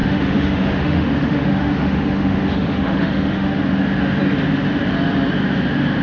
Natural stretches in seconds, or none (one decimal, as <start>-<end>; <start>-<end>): 3.6-6.0